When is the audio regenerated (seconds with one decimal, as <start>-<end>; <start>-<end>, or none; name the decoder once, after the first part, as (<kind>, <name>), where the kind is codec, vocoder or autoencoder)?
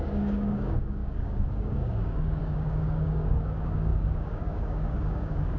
0.0-5.6 (codec, DAC)